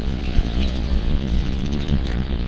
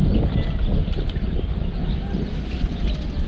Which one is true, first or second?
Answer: second